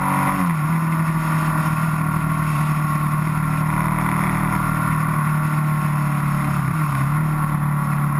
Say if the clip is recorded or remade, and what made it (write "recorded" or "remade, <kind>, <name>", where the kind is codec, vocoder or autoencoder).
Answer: recorded